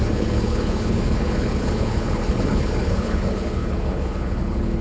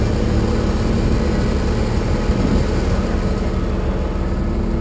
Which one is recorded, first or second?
second